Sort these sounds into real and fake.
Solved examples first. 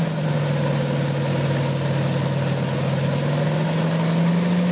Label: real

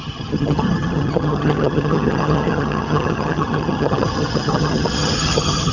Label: fake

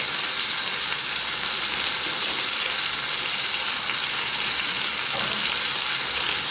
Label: real